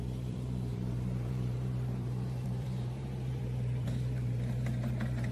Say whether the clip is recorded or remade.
remade